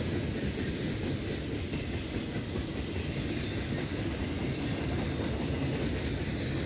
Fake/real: real